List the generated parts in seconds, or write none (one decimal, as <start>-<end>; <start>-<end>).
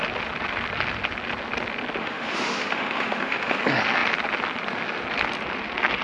2.0-3.6